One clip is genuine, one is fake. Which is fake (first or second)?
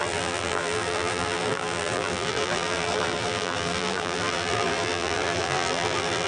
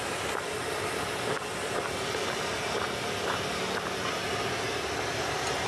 first